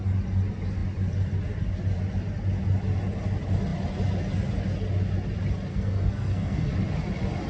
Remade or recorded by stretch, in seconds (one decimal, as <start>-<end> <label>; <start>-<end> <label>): 0.0-5.7 recorded; 5.7-6.7 remade; 6.7-7.5 recorded